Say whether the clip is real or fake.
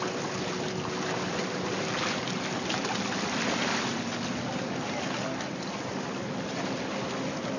real